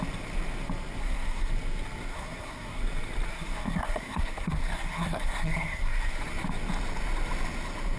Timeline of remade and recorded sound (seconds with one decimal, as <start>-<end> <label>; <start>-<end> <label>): 0.0-1.0 recorded; 1.0-1.5 remade; 1.5-2.1 recorded; 2.1-2.8 remade; 2.8-3.3 recorded; 3.3-6.2 remade; 6.2-8.0 recorded

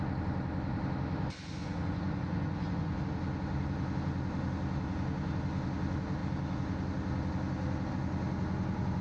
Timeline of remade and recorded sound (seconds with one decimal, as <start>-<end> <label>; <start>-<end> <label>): 0.0-1.6 recorded; 1.6-3.0 remade; 3.0-9.0 recorded

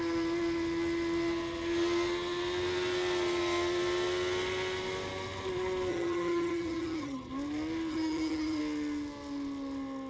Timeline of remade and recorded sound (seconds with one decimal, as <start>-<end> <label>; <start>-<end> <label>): 0.0-5.9 recorded; 5.9-7.3 remade; 7.3-7.9 recorded; 7.9-8.6 remade; 8.6-10.1 recorded

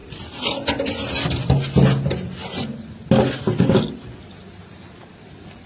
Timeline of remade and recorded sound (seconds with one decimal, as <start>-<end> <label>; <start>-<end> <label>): 0.0-5.7 recorded

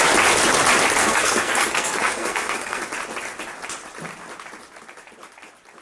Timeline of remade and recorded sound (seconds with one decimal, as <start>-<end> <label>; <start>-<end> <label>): 0.0-1.0 recorded; 1.0-2.8 remade; 2.8-5.8 recorded

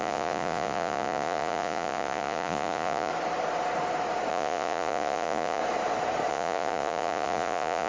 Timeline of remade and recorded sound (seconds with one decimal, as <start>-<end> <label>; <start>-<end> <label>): 0.0-3.1 remade; 3.1-4.3 recorded; 4.3-5.6 remade; 5.6-6.3 recorded; 6.3-7.9 remade